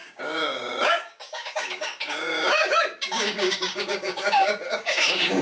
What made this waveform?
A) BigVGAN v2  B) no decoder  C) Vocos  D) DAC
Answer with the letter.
D